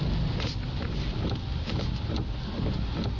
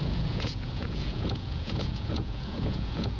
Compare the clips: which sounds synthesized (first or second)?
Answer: second